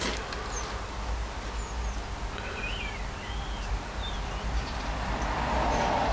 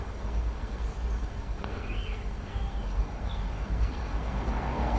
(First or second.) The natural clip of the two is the first